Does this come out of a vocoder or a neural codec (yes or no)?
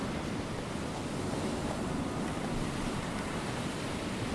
no